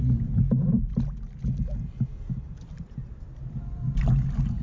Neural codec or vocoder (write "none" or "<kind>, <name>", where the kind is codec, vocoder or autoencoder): none